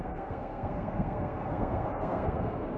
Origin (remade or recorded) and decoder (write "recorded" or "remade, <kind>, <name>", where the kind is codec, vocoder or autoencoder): remade, codec, SNAC